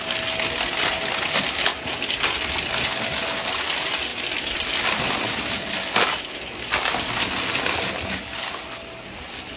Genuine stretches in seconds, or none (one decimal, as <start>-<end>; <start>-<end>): 0.0-9.6